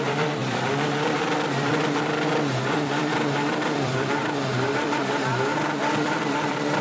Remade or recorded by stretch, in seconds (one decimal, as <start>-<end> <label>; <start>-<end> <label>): 0.0-4.2 remade; 4.2-4.7 recorded; 4.7-5.3 remade; 5.3-6.0 recorded; 6.0-6.8 remade